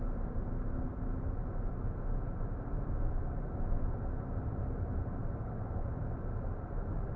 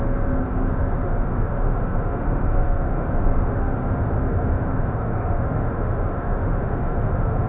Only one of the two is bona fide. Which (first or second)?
first